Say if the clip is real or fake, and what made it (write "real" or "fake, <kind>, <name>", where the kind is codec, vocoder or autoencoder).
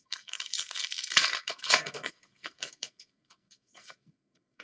fake, codec, SNAC